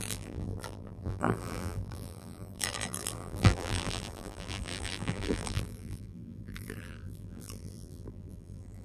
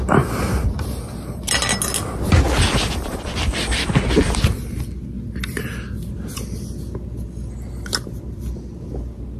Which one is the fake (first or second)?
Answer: first